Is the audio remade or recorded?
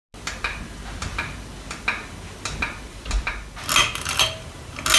recorded